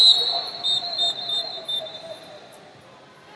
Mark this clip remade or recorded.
recorded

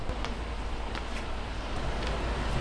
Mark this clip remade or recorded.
recorded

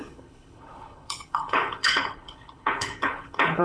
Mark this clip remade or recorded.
remade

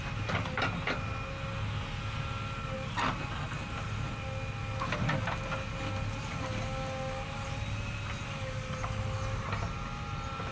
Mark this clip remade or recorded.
recorded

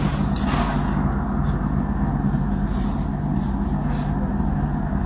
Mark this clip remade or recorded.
recorded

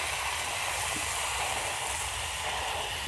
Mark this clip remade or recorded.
recorded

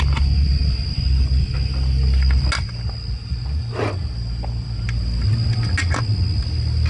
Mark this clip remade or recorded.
recorded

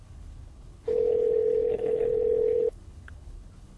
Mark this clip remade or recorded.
remade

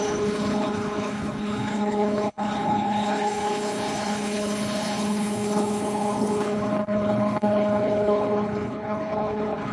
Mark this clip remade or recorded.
remade